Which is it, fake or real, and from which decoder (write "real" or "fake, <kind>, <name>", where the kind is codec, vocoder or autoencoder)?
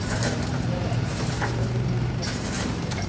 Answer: fake, vocoder, BigVGAN v2